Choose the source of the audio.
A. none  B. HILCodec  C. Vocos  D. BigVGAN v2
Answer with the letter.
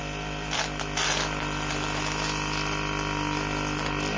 D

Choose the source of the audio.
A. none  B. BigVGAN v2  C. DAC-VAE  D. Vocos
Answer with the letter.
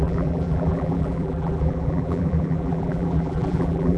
B